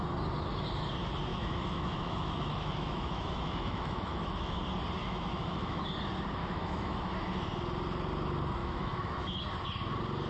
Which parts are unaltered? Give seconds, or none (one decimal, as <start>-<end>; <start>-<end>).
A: 0.0-1.3; 4.6-5.0; 5.8-6.4; 7.1-8.6; 9.4-10.3